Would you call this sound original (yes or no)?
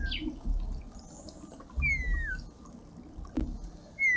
yes